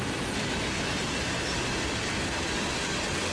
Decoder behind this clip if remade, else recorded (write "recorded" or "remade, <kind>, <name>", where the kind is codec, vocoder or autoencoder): recorded